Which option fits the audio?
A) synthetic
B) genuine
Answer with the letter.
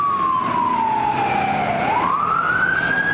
B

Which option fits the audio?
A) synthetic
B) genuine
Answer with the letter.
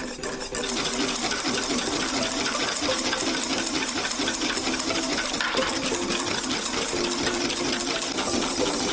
B